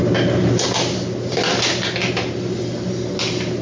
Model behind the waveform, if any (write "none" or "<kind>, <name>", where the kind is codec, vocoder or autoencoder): none